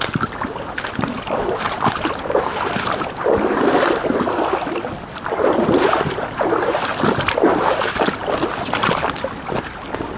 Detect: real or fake real